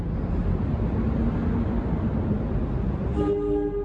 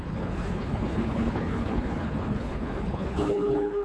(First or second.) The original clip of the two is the first